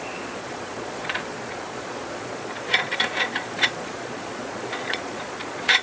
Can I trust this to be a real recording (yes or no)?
no